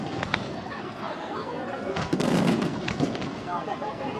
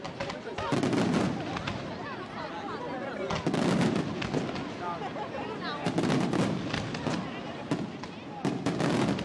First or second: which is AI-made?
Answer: first